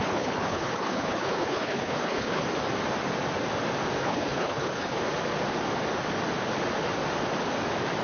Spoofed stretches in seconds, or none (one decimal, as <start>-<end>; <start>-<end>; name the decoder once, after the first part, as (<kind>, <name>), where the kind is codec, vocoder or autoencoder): 0.0-2.4 (codec, HILCodec); 4.0-5.0